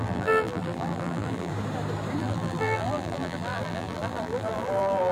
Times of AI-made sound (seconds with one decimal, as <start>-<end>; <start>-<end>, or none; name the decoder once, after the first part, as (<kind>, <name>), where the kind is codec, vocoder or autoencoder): 0.0-1.5 (vocoder, BigVGAN v2); 2.2-5.1